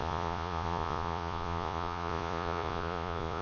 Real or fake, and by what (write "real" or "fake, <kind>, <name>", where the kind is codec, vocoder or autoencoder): fake, vocoder, Vocos